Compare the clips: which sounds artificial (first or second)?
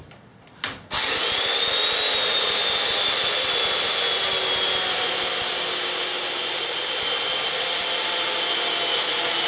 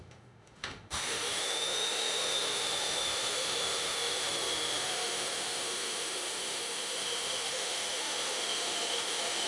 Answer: second